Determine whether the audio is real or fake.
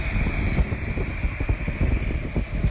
real